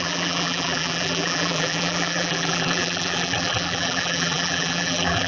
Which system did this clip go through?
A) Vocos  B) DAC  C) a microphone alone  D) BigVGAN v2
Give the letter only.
D